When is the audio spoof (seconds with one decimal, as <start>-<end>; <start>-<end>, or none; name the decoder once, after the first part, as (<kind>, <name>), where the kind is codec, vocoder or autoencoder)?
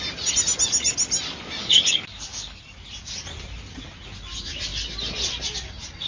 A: 1.6-2.6 (codec, DAC)